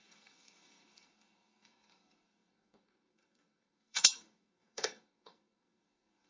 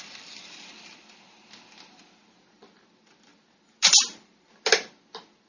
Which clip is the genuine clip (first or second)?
second